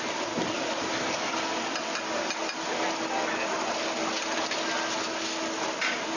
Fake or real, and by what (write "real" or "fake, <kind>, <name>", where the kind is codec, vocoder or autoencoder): real